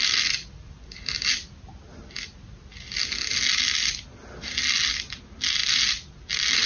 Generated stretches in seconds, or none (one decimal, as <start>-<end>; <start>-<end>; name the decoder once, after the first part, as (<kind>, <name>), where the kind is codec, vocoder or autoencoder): none